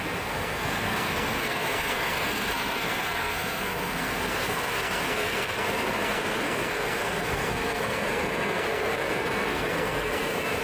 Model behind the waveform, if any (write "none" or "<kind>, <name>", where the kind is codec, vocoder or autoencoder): codec, SNAC